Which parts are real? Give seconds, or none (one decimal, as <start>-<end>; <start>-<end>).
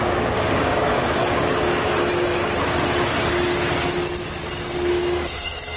1.9-4.9